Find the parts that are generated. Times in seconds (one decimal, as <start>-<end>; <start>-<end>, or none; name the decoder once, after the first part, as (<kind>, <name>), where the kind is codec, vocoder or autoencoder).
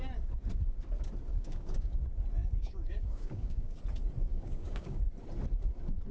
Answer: 1.3-2.0 (codec, DAC); 2.4-3.8; 4.3-5.0